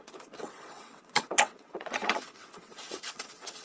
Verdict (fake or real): fake